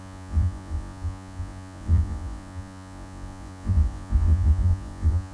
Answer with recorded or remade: remade